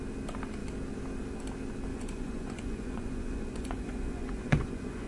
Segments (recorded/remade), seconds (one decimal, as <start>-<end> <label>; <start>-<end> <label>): 0.0-1.9 recorded; 1.9-5.1 remade